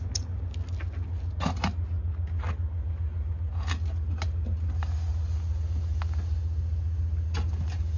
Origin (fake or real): real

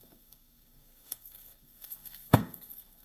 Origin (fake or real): fake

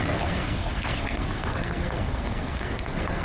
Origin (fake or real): fake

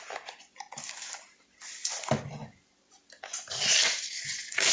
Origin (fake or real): real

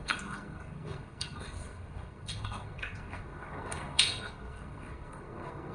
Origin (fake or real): fake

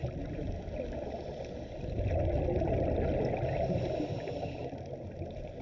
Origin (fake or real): real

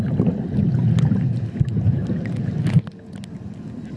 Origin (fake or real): real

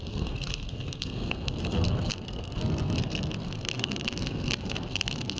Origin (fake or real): fake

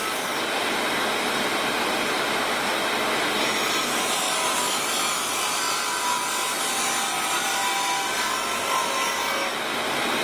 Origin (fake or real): real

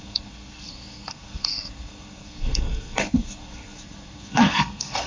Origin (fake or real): fake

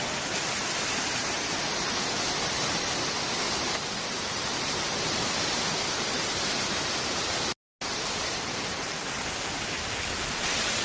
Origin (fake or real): real